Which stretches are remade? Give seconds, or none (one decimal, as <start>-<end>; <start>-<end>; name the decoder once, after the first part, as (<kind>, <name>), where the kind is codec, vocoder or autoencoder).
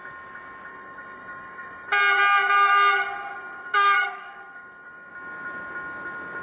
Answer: 0.7-1.9 (codec, DAC); 3.3-5.1